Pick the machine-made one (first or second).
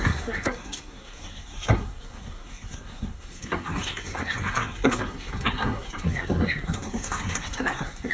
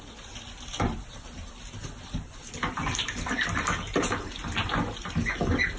first